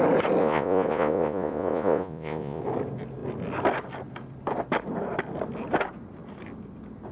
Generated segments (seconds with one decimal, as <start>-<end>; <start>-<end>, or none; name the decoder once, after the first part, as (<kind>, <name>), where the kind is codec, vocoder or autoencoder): 0.4-2.6 (vocoder, Vocos)